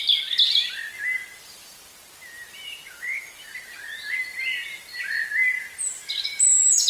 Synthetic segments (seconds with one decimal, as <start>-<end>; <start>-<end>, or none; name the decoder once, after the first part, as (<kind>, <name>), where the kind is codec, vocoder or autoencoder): none